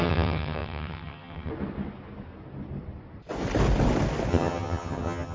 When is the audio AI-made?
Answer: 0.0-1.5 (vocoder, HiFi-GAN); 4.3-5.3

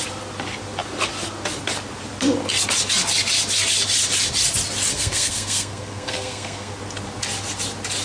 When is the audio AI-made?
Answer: 4.9-6.7 (codec, SNAC)

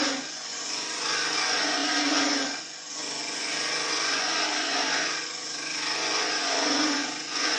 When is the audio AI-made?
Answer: 0.0-7.6 (vocoder, Vocos)

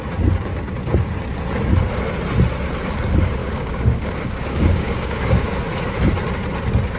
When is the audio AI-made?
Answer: 3.4-5.5 (codec, DAC)

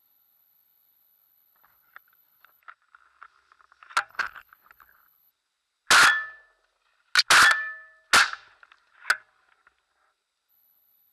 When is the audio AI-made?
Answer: 0.0-2.6 (codec, HILCodec); 4.1-5.3; 10.5-11.1

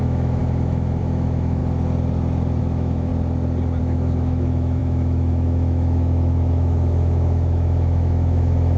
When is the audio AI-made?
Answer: 0.0-1.6 (autoencoder, DAC-VAE); 2.6-3.1; 3.8-8.8